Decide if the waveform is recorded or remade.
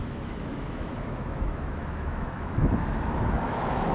remade